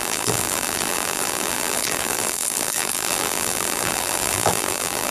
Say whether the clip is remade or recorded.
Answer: remade